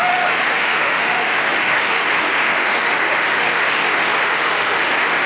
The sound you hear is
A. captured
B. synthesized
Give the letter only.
B